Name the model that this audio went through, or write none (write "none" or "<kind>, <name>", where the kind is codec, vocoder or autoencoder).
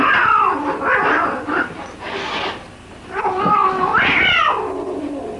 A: none